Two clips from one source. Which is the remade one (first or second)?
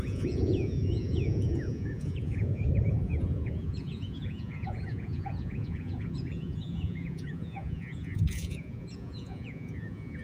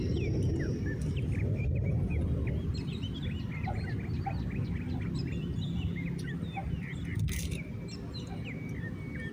first